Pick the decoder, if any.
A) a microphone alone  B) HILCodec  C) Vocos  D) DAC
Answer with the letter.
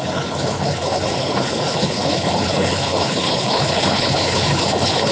B